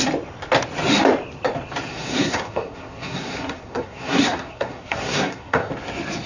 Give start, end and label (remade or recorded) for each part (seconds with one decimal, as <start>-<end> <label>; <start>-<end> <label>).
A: 0.0-1.9 recorded; 1.9-5.7 remade; 5.7-6.3 recorded